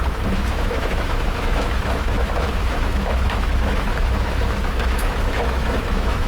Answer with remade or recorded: remade